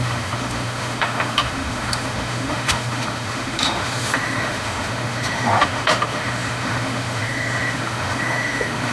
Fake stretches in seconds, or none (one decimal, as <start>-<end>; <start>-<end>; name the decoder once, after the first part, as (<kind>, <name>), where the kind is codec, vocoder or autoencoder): 0.0-8.9 (autoencoder, DAC-VAE)